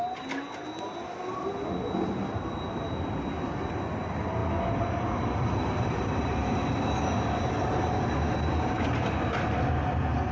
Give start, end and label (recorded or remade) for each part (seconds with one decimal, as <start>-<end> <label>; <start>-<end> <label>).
0.0-10.3 recorded